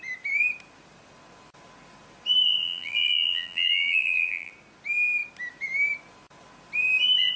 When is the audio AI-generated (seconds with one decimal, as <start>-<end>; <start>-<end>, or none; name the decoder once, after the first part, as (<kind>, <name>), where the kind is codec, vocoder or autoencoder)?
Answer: 2.6-4.5 (vocoder, BigVGAN v2)